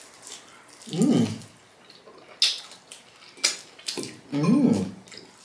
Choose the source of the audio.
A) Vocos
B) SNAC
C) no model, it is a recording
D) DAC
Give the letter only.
C